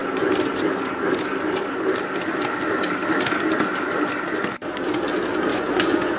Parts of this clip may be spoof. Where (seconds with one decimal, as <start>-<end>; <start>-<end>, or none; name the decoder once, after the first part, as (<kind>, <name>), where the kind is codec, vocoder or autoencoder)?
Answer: 5.5-6.2 (vocoder, Vocos)